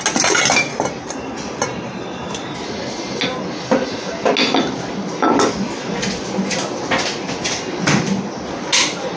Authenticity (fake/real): real